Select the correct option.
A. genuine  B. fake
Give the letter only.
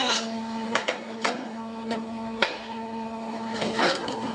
B